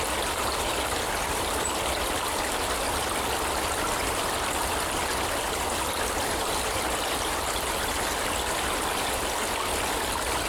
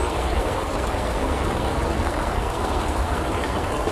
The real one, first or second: first